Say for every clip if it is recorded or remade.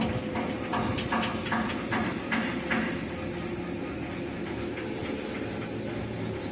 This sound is recorded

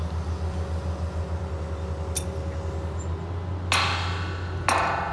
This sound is recorded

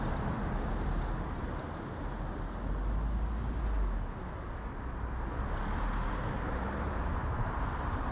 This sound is recorded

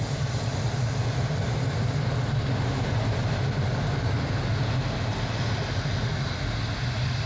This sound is recorded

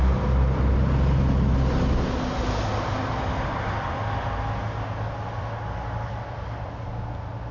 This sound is recorded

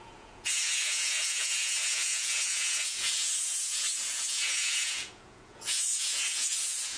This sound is remade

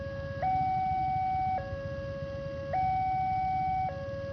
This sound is recorded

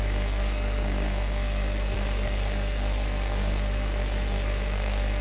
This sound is remade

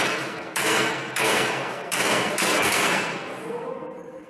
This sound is remade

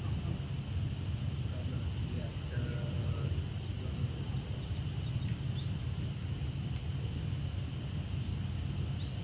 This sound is recorded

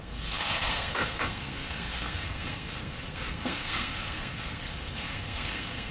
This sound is remade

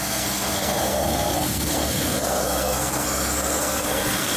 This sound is remade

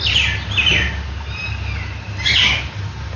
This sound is recorded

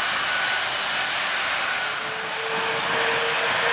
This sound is recorded